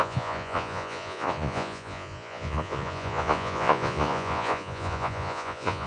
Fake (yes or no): yes